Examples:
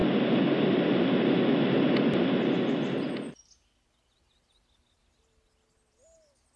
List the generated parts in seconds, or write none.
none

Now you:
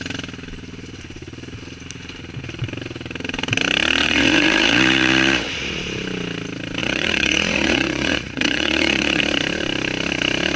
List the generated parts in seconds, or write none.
4.0-5.8 (vocoder, Vocos); 6.8-9.2

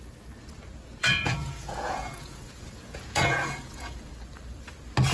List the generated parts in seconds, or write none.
1.0-4.1 (vocoder, Vocos)

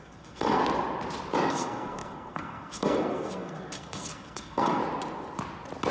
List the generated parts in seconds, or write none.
0.0-0.6 (codec, SNAC); 1.5-4.8